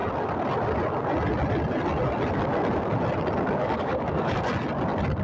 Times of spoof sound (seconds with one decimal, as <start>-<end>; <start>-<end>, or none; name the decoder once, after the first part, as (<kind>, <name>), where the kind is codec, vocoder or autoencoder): 3.6-4.5 (codec, DAC)